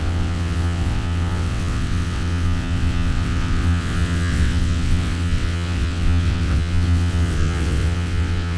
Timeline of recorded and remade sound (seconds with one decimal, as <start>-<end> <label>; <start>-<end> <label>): 0.0-8.6 remade

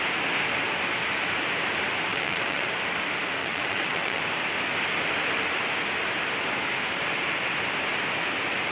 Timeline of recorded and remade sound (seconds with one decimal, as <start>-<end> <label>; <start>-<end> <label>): 0.0-2.1 recorded; 2.1-2.7 remade; 2.7-3.4 recorded; 3.4-4.2 remade; 4.2-8.7 recorded

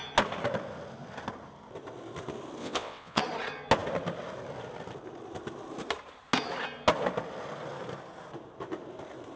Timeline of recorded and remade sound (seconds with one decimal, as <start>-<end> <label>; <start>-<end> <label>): 0.0-2.6 recorded; 2.6-3.2 remade; 3.2-9.4 recorded

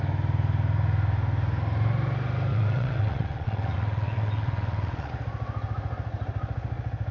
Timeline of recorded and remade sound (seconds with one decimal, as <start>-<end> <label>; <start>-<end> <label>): 0.0-2.5 recorded; 2.5-5.1 remade; 5.1-7.1 recorded

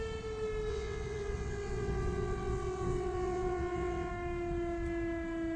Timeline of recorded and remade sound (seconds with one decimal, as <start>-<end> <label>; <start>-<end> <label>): 0.0-0.7 recorded; 0.7-4.1 remade; 4.1-5.6 recorded

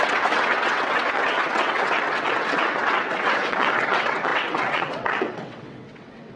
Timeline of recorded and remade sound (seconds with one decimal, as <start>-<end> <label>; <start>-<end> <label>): 0.0-6.4 remade